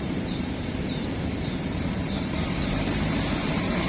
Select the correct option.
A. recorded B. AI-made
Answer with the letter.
B